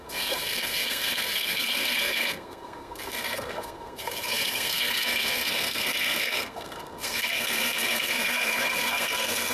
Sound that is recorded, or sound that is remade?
remade